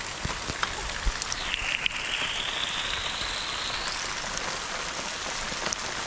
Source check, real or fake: real